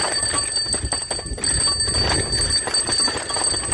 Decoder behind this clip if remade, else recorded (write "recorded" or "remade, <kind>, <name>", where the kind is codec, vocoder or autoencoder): recorded